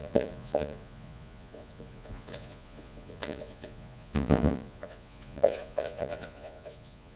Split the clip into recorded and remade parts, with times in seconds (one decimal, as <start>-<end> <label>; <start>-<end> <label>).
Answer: 0.0-7.2 remade